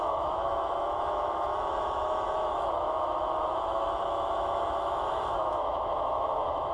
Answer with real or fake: fake